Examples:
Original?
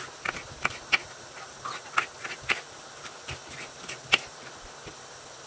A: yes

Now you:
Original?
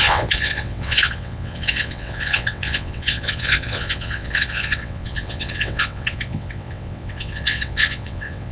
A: no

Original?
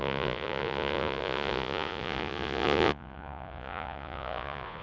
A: no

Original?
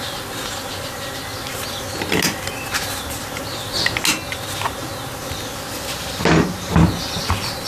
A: yes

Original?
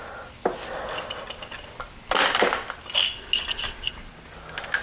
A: yes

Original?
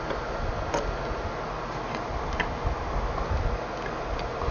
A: yes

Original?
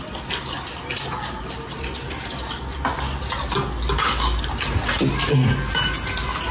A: yes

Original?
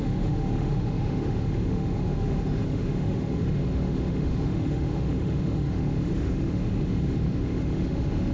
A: no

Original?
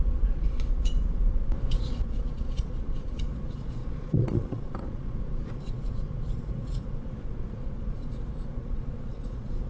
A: no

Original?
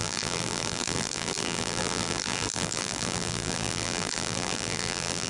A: no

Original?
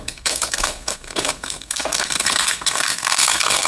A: no